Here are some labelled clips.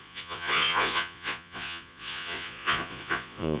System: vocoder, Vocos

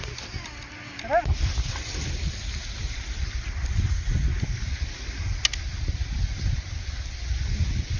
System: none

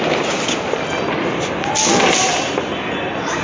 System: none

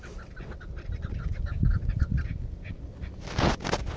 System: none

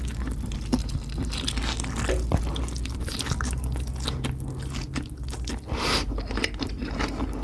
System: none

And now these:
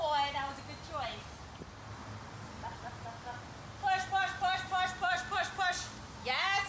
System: none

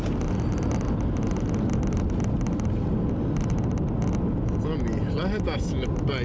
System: none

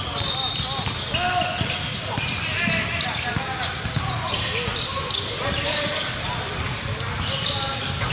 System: none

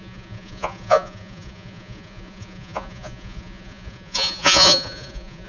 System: vocoder, Vocos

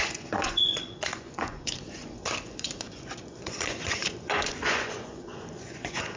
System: vocoder, Vocos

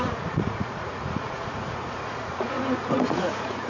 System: vocoder, Vocos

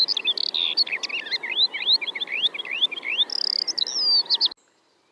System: none